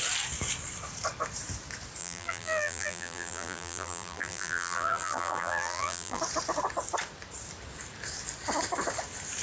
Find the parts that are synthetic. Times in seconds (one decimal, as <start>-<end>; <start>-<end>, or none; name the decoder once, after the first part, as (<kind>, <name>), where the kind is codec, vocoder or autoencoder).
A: 2.0-6.2 (vocoder, BigVGAN v2)